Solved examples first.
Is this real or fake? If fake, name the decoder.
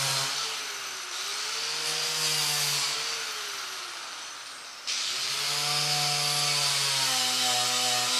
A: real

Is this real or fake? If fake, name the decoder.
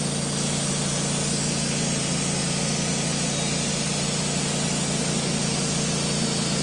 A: real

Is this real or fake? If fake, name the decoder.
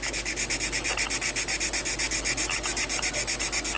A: real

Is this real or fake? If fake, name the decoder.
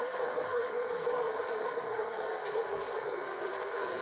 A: fake, codec, SNAC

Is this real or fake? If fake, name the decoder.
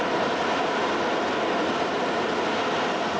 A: real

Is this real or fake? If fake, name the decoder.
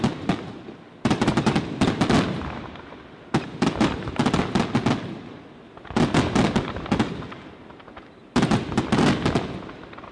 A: real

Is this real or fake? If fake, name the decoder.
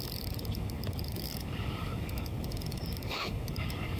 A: fake, codec, DAC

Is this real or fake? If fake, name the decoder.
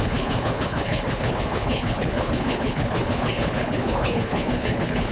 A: fake, codec, HILCodec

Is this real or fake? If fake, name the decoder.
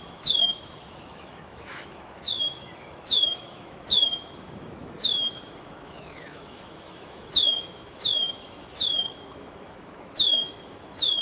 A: fake, autoencoder, DAC-VAE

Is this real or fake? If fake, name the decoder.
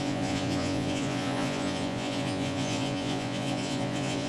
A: fake, vocoder, Vocos